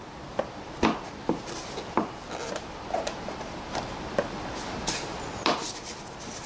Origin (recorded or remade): remade